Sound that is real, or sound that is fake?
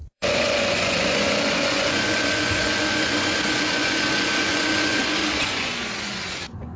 fake